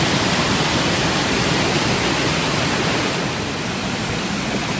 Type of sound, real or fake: real